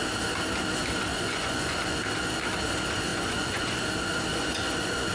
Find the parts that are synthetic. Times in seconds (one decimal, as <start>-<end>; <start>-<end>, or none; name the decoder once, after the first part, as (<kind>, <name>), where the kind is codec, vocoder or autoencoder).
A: 1.1-2.0 (vocoder, Vocos); 3.1-3.8; 4.3-5.1